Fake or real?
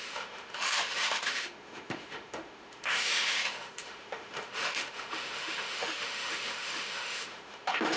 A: fake